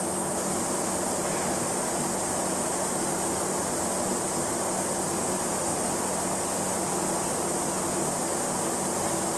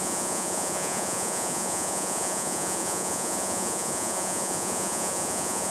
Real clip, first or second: first